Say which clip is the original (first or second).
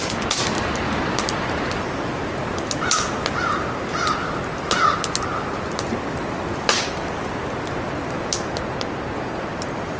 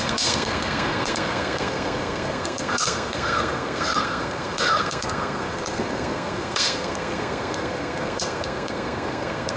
first